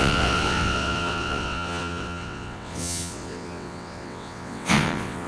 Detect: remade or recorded remade